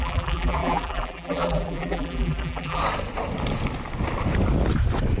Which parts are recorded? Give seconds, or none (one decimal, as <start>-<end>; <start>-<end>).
2.8-5.2